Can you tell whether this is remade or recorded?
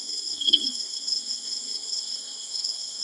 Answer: remade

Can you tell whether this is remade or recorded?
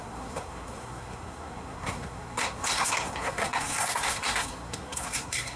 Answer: remade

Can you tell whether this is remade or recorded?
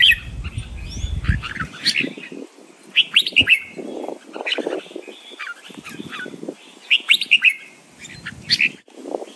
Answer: recorded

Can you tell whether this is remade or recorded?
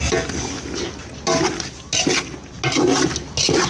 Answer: recorded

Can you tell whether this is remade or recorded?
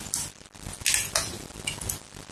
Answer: recorded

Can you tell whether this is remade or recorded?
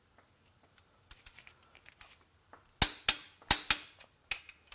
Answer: recorded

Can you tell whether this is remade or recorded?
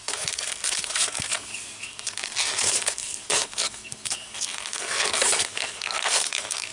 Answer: remade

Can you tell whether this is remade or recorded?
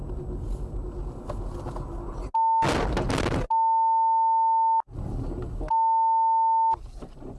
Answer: recorded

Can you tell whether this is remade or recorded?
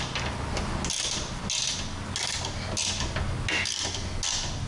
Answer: recorded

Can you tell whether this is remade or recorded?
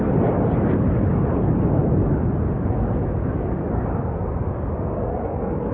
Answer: recorded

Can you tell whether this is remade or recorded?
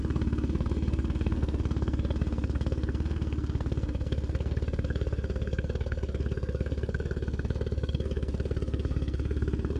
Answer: remade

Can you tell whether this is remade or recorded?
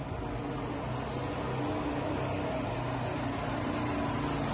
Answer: recorded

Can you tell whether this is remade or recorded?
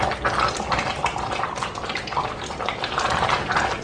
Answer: recorded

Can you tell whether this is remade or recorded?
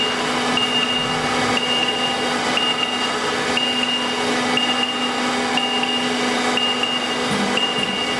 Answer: recorded